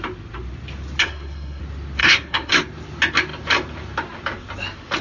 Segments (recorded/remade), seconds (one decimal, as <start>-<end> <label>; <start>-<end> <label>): 0.0-1.0 recorded; 1.0-1.6 remade; 1.6-2.0 recorded; 2.0-2.6 remade; 2.6-5.0 recorded